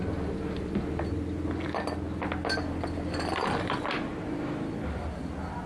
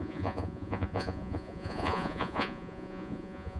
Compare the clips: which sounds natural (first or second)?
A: first